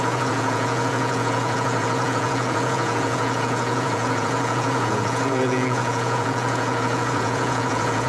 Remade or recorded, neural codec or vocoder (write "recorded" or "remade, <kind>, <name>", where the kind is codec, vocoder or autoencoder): remade, vocoder, Vocos